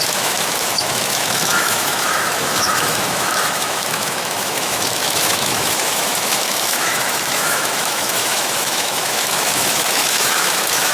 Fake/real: fake